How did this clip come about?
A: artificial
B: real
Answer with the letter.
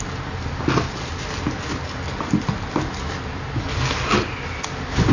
B